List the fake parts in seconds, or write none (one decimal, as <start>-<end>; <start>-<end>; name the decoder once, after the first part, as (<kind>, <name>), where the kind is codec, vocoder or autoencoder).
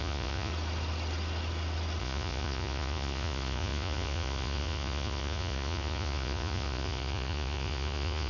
0.0-0.5 (vocoder, Vocos); 2.0-8.3